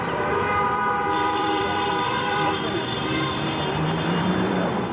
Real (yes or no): no